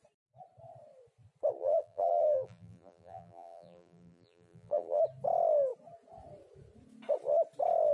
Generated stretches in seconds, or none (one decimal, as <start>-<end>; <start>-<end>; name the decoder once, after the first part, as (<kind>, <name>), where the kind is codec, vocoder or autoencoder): 1.6-5.0 (vocoder, BigVGAN v2)

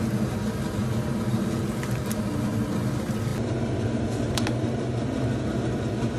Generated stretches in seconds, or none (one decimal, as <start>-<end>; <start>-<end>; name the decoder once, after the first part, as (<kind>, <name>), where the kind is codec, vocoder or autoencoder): none

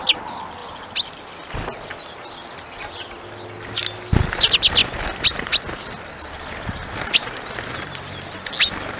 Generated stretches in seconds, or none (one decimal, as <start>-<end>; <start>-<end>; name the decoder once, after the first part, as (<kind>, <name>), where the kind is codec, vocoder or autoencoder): 0.6-2.0 (vocoder, BigVGAN v2); 4.8-8.5

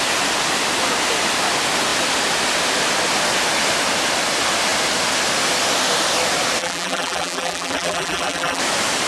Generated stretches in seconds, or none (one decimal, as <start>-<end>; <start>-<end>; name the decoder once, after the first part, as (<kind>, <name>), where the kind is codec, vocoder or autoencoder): 6.6-8.6 (vocoder, BigVGAN v2)